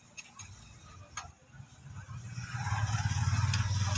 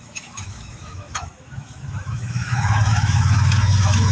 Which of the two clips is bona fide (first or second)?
first